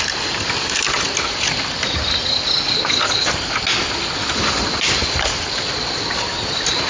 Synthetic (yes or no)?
no